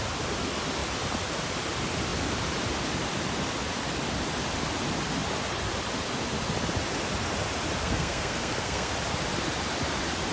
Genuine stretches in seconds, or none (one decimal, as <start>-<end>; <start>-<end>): 0.0-7.8; 8.9-10.3